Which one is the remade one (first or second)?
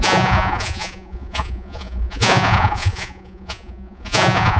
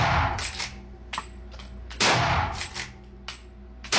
first